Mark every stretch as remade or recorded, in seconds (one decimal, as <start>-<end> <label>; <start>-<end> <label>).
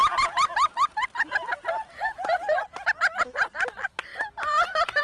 0.0-4.1 recorded; 4.1-5.0 remade